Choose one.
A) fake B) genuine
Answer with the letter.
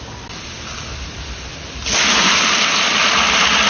B